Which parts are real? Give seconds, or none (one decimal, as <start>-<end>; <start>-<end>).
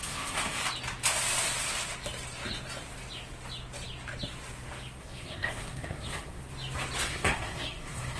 0.6-5.0; 6.4-7.1